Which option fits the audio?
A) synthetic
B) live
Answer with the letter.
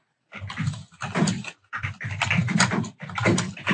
A